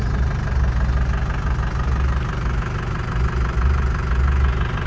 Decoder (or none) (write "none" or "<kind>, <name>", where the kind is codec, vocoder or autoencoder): none